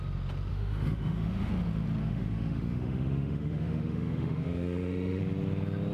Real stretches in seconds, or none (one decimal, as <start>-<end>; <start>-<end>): 0.0-0.5; 1.5-2.0; 5.2-5.9

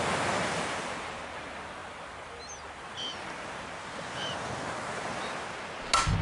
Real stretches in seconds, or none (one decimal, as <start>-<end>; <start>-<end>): 0.0-6.2